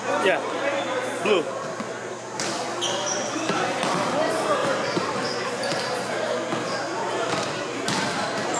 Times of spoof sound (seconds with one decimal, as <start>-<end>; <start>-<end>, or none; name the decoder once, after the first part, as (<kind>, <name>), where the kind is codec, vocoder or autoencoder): 4.6-5.7 (vocoder, BigVGAN v2)